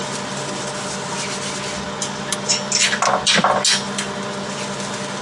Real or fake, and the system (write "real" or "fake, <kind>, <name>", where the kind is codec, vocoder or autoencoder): real